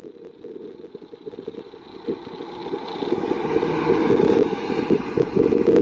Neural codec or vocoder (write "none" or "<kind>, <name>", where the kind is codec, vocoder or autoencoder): none